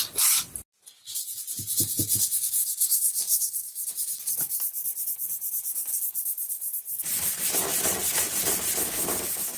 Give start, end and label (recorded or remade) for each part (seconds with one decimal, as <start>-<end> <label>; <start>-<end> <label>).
0.0-2.6 recorded; 2.6-3.9 remade; 3.9-5.9 recorded; 5.9-6.8 remade; 6.8-9.6 recorded